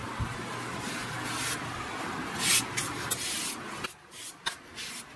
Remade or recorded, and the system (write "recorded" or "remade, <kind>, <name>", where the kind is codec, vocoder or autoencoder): recorded